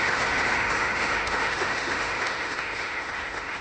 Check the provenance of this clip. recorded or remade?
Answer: remade